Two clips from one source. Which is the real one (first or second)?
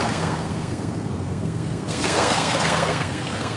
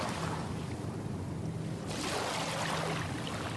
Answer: second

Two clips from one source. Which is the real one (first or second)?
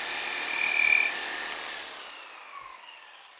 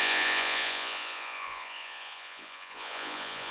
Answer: first